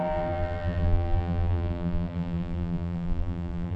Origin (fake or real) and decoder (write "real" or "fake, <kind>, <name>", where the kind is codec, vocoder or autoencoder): fake, vocoder, BigVGAN v2